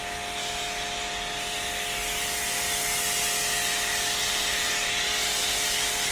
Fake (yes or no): no